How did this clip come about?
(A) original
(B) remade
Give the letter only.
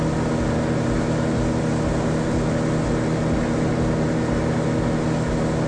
A